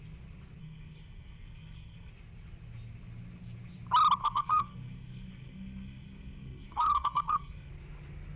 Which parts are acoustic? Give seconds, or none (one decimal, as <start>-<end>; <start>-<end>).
0.0-0.6; 2.1-4.2; 7.7-8.4